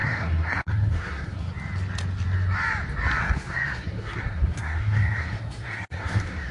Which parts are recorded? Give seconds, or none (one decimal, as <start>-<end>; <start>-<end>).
1.5-3.2